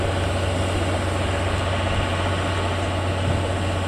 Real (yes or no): yes